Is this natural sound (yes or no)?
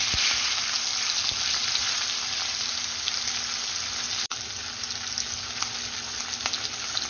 yes